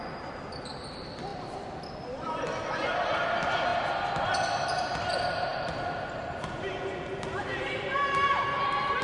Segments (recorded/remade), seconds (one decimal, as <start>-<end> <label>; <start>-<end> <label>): 0.0-9.0 recorded